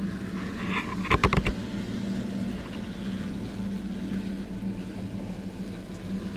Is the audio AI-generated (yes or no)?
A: no